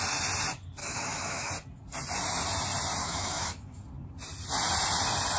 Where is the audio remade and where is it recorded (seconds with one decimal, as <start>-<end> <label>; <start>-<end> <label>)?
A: 0.0-0.8 recorded; 0.8-1.5 remade; 1.5-3.0 recorded; 3.0-3.8 remade; 3.8-5.4 recorded